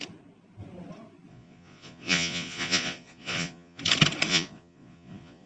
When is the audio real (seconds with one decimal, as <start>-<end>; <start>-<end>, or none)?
0.0-1.3; 3.8-4.3